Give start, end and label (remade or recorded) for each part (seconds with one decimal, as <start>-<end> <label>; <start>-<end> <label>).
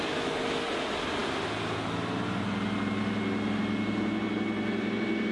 0.0-5.3 recorded